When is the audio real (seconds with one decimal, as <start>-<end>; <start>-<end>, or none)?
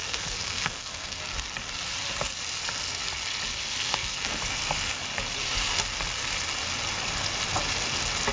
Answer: 1.2-3.5; 4.4-8.3